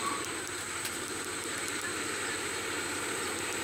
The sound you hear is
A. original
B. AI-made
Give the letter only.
B